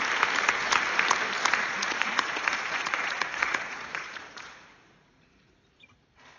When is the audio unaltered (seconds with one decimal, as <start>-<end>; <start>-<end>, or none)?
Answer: 0.0-1.6; 5.2-6.4